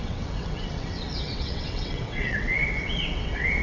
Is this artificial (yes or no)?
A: yes